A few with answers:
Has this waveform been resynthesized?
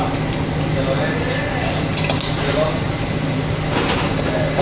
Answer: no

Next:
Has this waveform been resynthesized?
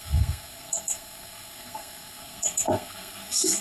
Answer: yes